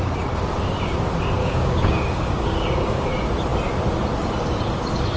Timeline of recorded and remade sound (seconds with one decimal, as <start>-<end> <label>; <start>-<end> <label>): 0.0-1.4 recorded; 1.4-3.1 remade; 3.1-5.2 recorded